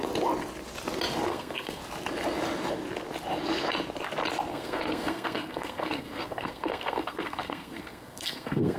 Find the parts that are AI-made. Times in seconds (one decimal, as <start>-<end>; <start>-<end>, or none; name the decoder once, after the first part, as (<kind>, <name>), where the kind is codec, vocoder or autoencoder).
1.3-1.8 (codec, SNAC); 4.5-8.8